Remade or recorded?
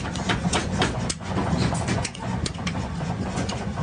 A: remade